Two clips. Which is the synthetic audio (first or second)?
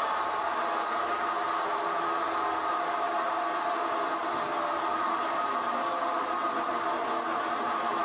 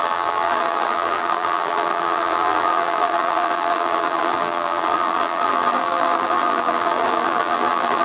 second